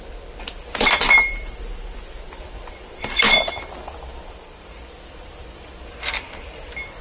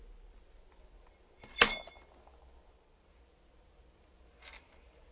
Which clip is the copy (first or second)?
first